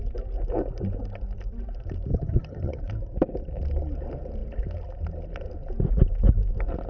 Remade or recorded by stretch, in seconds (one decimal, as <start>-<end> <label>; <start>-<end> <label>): 0.0-2.1 recorded; 2.1-2.8 remade; 2.8-6.9 recorded